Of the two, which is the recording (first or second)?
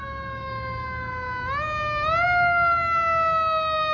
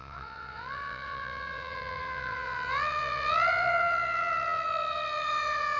first